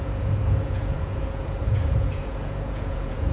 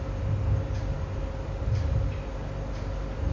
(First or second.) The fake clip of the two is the first